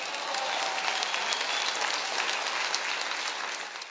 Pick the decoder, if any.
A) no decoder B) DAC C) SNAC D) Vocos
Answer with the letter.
A